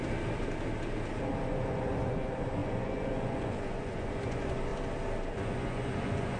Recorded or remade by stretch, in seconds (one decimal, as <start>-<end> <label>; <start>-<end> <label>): 0.0-1.4 recorded; 1.4-4.7 remade; 4.7-5.3 recorded; 5.3-6.4 remade

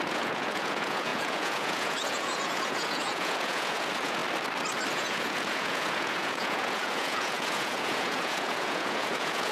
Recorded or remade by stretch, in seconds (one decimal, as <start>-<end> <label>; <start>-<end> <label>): 0.0-4.2 remade; 4.2-4.9 recorded; 4.9-9.5 remade

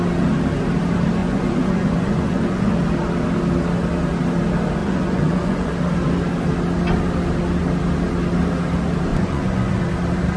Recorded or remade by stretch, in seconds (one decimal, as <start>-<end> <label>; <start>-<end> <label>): 0.0-1.2 recorded; 1.2-2.7 remade; 2.7-4.8 recorded; 4.8-5.7 remade; 5.7-9.1 recorded; 9.1-9.8 remade; 9.8-10.4 recorded

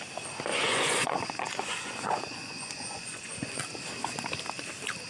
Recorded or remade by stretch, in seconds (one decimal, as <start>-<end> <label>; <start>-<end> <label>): 0.0-0.5 recorded; 0.5-3.6 remade; 3.6-5.1 recorded

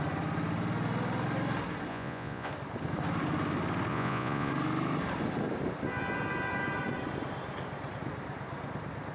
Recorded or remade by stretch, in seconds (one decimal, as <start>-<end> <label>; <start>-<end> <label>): 0.0-1.9 recorded; 1.9-2.5 remade; 2.5-3.9 recorded; 3.9-4.5 remade; 4.5-9.1 recorded

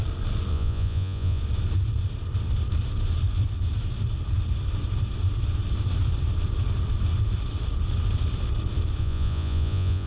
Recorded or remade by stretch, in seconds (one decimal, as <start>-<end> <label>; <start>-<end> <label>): 0.0-0.5 recorded; 0.5-1.4 remade; 1.4-9.0 recorded; 9.0-10.1 remade